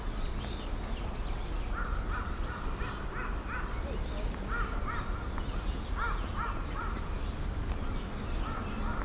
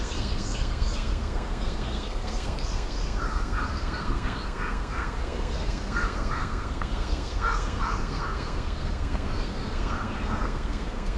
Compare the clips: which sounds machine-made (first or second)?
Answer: second